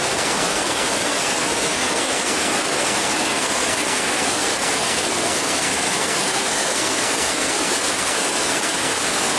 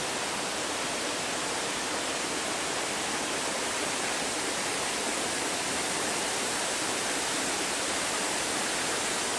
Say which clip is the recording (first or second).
second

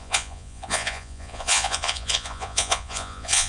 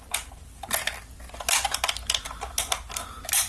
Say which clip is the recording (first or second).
second